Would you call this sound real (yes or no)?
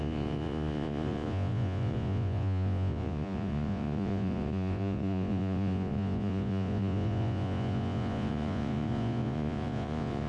no